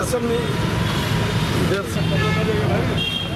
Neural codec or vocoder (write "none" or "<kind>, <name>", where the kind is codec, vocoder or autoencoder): none